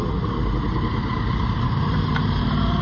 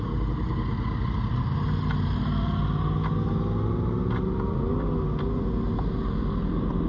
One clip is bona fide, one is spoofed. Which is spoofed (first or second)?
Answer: first